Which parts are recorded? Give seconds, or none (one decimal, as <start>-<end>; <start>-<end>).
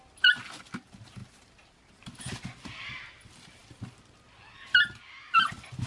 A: 0.0-5.9